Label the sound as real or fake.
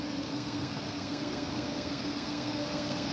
fake